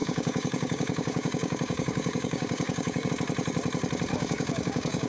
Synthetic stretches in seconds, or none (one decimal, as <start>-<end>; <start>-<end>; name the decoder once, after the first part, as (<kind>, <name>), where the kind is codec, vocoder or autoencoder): 0.0-3.1 (codec, DAC); 4.1-5.1